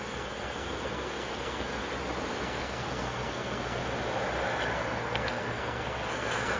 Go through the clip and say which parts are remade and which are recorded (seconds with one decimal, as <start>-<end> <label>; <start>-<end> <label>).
0.0-1.8 remade; 1.8-2.4 recorded; 2.4-3.8 remade; 3.8-4.7 recorded; 4.7-6.6 remade

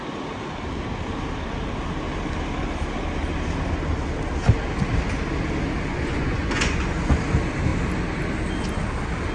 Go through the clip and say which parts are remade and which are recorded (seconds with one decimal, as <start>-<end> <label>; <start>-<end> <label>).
0.0-5.9 recorded; 5.9-7.2 remade; 7.2-9.3 recorded

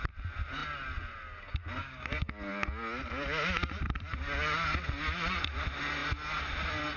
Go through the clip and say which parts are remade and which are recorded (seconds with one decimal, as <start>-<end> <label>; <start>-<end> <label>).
0.0-1.8 recorded; 1.8-2.3 remade; 2.3-7.0 recorded

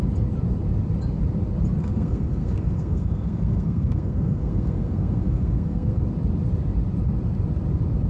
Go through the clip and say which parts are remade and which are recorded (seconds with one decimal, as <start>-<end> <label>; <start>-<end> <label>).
0.0-1.8 recorded; 1.8-6.0 remade; 6.0-8.1 recorded

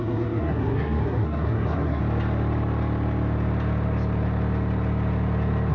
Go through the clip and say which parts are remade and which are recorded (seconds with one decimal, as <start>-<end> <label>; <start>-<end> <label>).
0.0-2.0 remade; 2.0-5.7 recorded

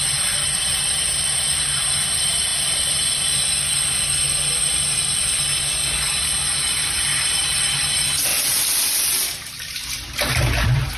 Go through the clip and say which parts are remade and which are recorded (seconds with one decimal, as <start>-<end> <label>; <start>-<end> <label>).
0.0-11.0 recorded